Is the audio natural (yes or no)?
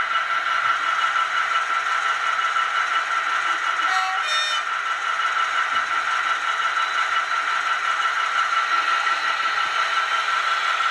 yes